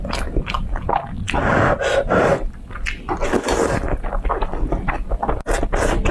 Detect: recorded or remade recorded